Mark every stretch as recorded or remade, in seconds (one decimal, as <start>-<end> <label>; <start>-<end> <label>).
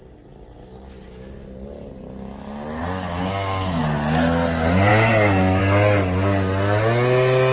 0.0-2.8 recorded; 2.8-3.8 remade; 3.8-4.9 recorded; 4.9-5.6 remade; 5.6-7.5 recorded